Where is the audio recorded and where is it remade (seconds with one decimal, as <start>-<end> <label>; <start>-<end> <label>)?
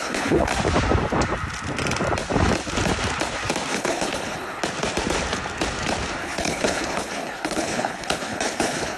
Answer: 0.0-0.5 remade; 0.5-3.7 recorded; 3.7-4.6 remade; 4.6-6.2 recorded; 6.2-9.0 remade